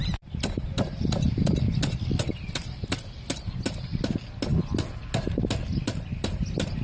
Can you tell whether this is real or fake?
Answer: real